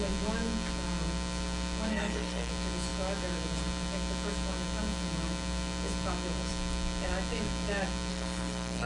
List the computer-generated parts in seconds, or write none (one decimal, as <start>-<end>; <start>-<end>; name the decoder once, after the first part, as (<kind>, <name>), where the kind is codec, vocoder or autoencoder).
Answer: 1.9-2.5 (codec, SNAC); 8.1-8.9